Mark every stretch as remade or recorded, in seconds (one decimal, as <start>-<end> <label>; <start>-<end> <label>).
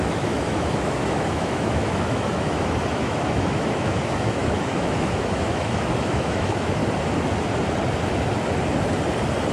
0.0-6.8 remade; 6.8-9.5 recorded